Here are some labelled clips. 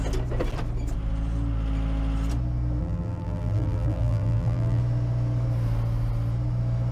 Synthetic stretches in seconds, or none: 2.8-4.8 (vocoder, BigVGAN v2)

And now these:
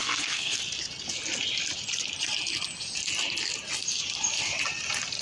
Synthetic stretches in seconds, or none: 0.0-0.6 (codec, SNAC)

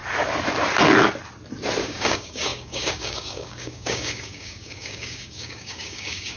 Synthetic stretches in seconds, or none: 1.8-6.4 (codec, DAC)

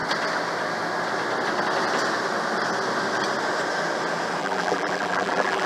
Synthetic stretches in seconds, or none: 4.4-5.7 (vocoder, BigVGAN v2)

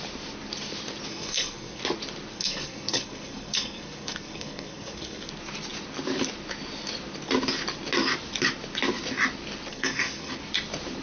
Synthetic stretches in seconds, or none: 1.1-1.8 (codec, SNAC); 2.3-5.3; 9.7-10.3

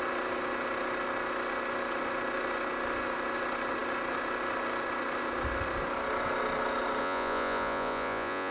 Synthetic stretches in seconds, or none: 7.0-8.5 (vocoder, Vocos)